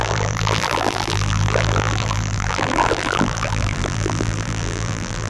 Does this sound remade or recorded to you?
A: remade